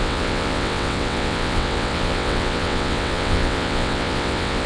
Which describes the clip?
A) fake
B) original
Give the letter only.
A